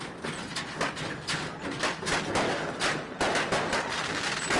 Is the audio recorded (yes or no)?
yes